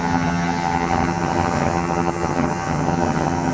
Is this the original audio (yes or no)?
no